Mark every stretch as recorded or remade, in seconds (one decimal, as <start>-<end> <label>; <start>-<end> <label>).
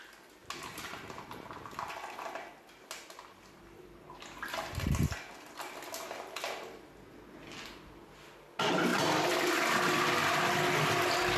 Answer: 0.0-11.4 recorded